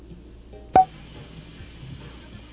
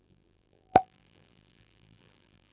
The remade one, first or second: second